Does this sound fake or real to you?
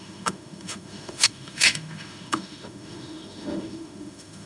fake